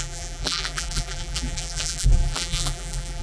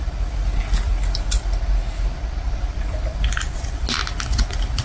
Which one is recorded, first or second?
second